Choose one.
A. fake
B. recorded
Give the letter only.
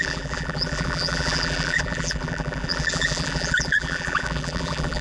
A